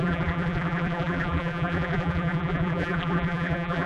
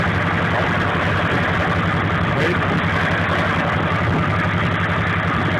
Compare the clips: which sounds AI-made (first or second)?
first